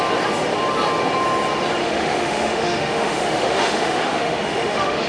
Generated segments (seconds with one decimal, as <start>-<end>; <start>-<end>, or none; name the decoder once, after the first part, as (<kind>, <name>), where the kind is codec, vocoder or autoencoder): 1.8-5.1 (autoencoder, DAC-VAE)